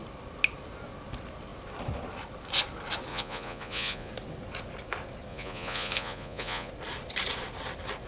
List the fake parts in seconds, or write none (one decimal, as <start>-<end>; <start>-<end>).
3.1-4.1; 5.3-6.7